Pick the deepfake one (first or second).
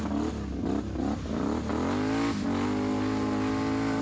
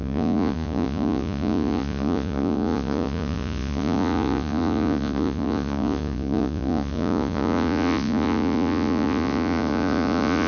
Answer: second